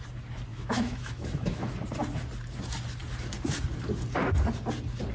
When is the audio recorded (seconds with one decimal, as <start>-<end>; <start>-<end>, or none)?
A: 0.0-0.5; 1.7-5.1